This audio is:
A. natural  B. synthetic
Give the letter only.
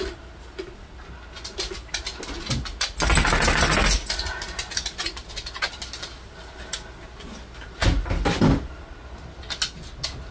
A